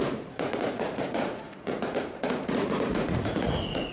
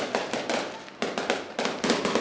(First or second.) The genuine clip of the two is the second